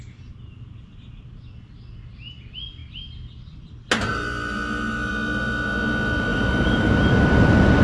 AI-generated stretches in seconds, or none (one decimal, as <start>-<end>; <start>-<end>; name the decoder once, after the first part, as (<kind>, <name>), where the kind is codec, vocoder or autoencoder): 6.3-6.9 (vocoder, BigVGAN v2)